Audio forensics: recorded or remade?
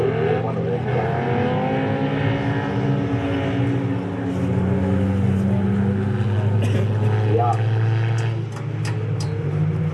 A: recorded